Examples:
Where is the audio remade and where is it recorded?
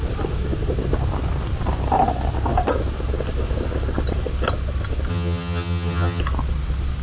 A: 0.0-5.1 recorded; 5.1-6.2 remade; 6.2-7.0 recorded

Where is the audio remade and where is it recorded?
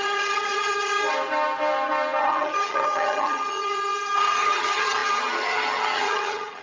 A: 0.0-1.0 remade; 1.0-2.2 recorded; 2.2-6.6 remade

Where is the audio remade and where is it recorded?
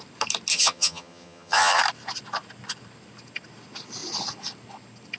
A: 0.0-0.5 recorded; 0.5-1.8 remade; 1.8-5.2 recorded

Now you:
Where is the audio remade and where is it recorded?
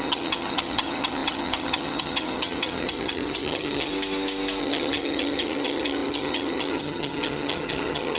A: 0.0-3.9 remade; 3.9-4.6 recorded; 4.6-8.2 remade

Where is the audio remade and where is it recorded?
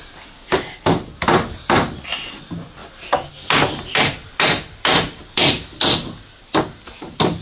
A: 0.0-7.4 recorded